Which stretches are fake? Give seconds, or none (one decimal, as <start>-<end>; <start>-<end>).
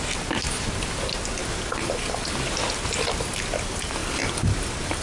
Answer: none